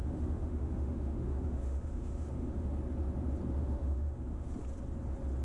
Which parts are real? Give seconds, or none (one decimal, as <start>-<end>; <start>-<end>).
2.8-3.6; 4.5-5.4